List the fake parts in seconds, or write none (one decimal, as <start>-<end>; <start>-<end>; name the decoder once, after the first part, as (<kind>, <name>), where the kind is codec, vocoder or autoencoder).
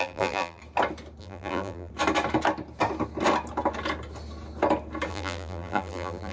0.0-0.6 (vocoder, BigVGAN v2); 1.2-1.9; 5.1-6.3